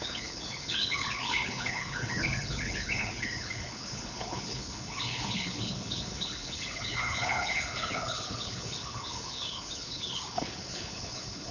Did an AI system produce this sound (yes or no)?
yes